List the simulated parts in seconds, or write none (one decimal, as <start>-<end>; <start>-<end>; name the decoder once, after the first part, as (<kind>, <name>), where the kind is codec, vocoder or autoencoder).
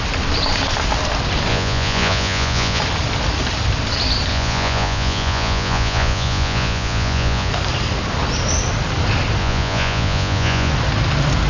1.5-2.8 (vocoder, Vocos); 4.3-7.5; 9.4-10.7